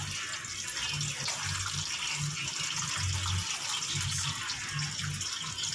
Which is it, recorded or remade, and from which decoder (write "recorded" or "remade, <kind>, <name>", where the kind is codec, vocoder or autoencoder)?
recorded